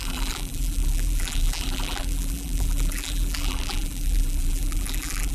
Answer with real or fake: fake